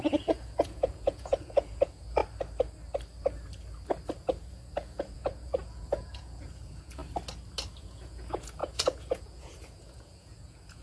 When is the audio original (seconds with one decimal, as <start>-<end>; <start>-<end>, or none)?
2.2-4.5; 7.0-7.8